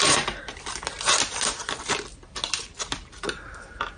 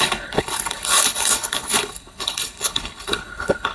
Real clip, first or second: first